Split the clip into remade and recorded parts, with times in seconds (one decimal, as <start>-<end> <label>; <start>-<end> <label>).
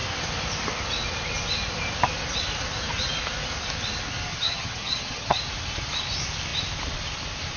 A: 0.0-4.3 recorded; 4.3-5.4 remade; 5.4-7.6 recorded